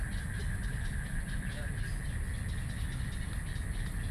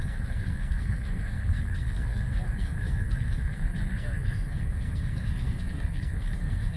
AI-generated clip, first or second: second